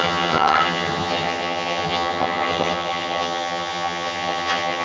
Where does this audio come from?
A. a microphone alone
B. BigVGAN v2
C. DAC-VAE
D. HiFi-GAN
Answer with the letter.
D